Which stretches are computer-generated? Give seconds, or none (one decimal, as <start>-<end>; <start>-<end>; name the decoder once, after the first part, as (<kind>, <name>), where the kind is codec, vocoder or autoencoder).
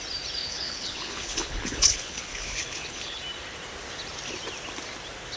0.4-3.2 (codec, HILCodec)